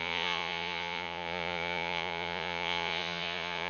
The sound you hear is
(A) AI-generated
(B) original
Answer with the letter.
A